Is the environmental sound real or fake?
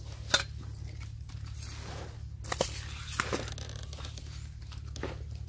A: real